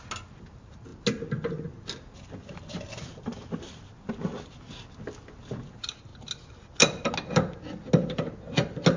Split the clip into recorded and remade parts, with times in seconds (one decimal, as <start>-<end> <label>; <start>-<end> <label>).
0.0-9.0 recorded